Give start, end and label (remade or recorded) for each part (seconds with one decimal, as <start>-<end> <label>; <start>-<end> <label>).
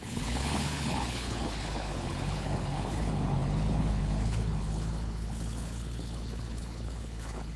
0.0-7.6 remade